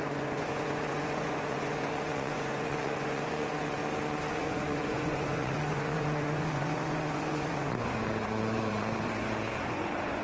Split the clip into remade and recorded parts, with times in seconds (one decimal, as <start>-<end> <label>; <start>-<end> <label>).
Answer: 0.0-3.8 remade; 3.8-4.3 recorded; 4.3-10.2 remade